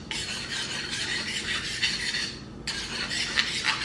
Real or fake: real